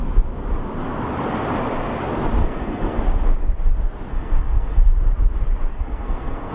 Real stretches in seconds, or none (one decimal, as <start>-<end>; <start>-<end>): 0.0-2.4; 3.0-4.1; 4.9-5.7